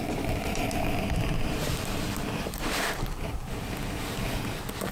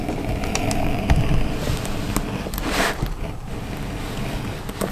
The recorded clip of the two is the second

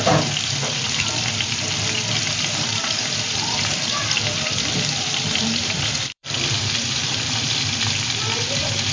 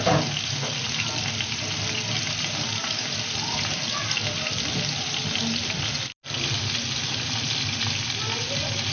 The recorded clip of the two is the second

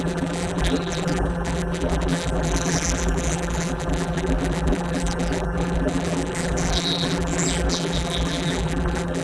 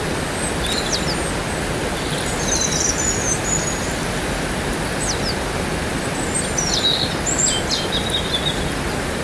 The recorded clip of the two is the second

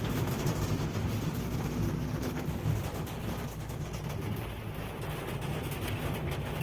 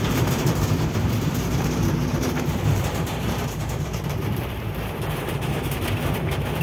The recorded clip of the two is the first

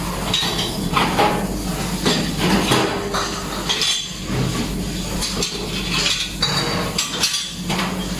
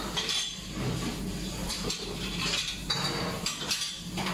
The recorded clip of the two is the first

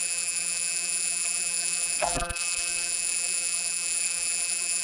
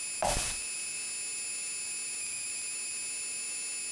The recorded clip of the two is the second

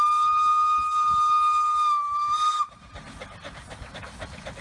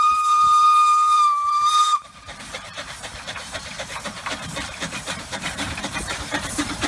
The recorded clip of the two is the first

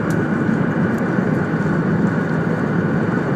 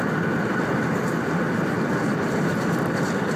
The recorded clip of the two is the first